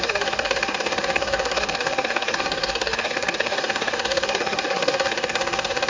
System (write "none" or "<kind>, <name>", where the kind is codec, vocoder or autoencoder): codec, SNAC